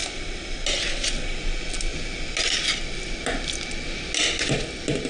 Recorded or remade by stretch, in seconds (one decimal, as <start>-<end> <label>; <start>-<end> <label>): 0.0-5.1 recorded